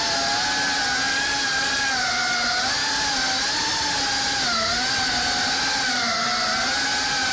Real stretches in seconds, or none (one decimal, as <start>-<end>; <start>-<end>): 0.0-7.3